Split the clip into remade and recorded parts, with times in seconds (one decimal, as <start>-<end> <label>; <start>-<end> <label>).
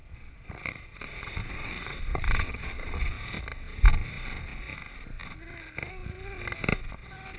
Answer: 0.0-3.1 remade; 3.1-7.4 recorded